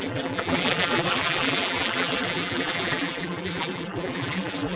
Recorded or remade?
remade